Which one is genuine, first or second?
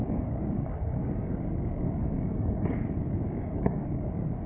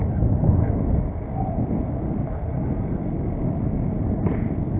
second